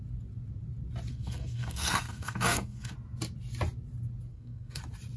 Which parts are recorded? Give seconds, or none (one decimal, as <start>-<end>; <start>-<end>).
0.0-1.1; 2.9-4.3; 4.8-5.2